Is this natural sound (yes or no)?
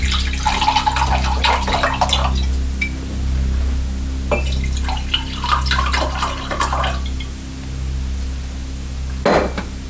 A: yes